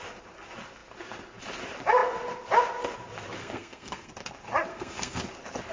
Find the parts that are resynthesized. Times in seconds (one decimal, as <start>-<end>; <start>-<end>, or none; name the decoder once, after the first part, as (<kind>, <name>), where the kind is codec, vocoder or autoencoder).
3.4-4.1 (codec, SNAC); 4.7-5.2